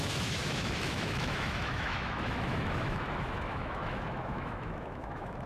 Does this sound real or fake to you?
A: fake